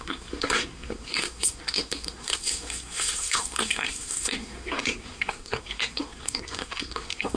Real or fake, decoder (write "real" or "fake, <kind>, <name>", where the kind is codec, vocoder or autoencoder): fake, codec, SNAC